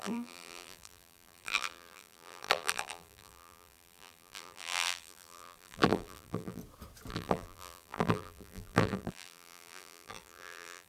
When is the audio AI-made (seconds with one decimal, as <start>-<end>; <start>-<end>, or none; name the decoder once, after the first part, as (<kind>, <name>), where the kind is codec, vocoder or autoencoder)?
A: 0.0-6.6 (vocoder, BigVGAN v2); 7.1-10.9